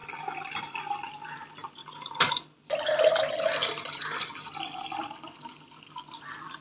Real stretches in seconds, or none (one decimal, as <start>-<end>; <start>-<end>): 0.0-6.6